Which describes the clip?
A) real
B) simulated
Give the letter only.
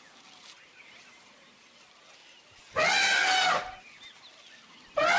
A